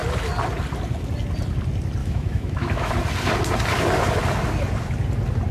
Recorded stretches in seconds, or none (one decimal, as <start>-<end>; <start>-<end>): 0.0-2.0; 2.9-5.5